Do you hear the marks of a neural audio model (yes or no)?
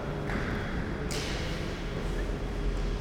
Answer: no